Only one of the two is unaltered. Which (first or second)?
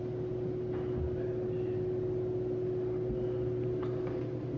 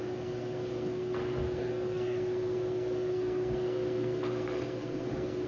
first